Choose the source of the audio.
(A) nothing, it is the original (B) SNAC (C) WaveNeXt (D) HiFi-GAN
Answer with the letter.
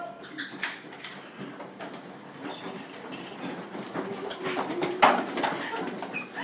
A